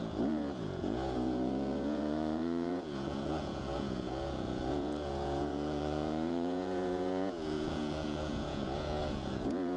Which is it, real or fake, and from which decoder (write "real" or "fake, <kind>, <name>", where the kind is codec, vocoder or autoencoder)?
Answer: fake, vocoder, Vocos